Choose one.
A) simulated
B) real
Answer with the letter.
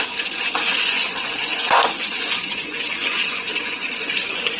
A